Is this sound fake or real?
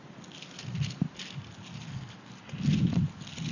real